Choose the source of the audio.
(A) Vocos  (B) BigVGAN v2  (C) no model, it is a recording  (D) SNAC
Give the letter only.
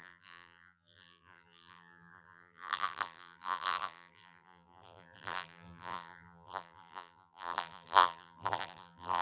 B